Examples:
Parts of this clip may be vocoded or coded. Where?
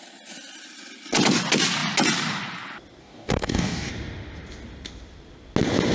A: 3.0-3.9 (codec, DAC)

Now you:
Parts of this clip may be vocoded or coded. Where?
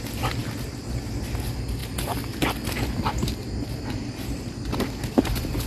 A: none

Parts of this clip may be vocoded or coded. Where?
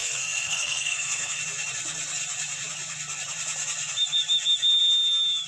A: 0.0-1.4 (codec, SNAC)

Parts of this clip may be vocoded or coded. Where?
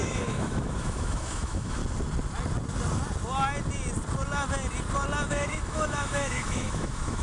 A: 0.0-1.8 (autoencoder, DAC-VAE); 5.3-7.2